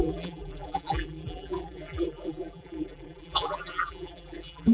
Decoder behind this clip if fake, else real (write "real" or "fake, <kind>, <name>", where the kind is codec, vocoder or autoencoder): fake, vocoder, BigVGAN v2